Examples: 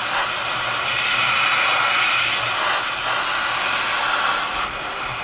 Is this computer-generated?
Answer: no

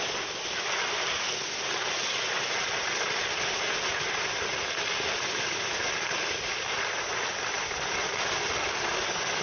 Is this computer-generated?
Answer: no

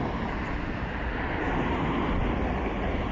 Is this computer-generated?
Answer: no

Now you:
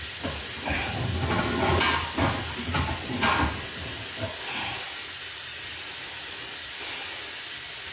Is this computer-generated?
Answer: no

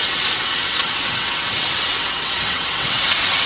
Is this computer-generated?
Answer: yes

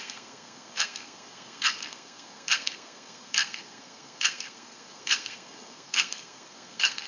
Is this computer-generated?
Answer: yes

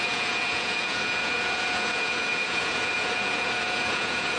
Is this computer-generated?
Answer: yes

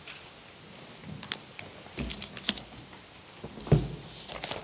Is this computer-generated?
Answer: no